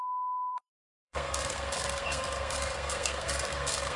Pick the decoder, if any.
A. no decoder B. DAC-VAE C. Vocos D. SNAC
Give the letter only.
D